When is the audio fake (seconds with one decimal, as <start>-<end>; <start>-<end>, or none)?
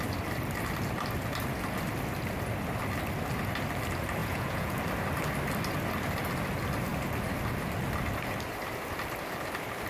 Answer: 4.2-4.8